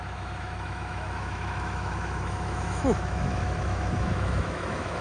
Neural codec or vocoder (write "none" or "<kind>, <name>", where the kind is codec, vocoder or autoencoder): autoencoder, DAC-VAE